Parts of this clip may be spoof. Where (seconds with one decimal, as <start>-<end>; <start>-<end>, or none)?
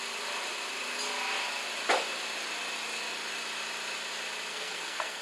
4.5-5.2